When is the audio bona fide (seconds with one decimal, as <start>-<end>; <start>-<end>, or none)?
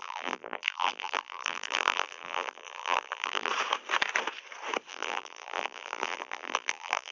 3.5-4.9